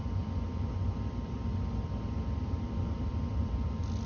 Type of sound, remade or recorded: remade